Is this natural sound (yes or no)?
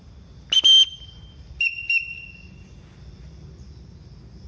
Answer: yes